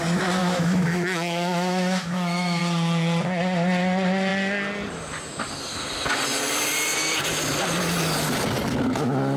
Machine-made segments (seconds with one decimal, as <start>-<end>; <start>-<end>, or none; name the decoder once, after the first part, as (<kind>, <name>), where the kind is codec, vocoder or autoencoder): 0.4-2.6 (autoencoder, DAC-VAE)